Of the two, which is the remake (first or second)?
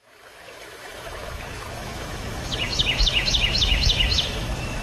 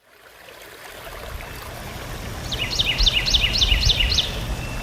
first